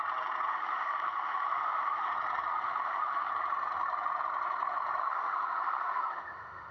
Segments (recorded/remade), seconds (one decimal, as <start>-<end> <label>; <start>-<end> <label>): 0.0-0.5 recorded; 0.5-2.1 remade; 2.1-2.5 recorded; 2.5-3.3 remade; 3.3-5.0 recorded; 5.0-6.7 remade